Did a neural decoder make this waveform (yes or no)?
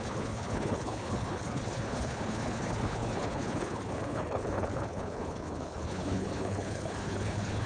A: yes